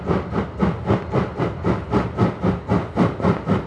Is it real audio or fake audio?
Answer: real